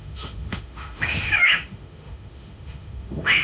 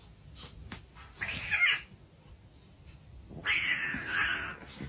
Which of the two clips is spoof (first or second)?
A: first